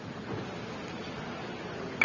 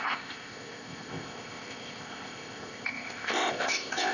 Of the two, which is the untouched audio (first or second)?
first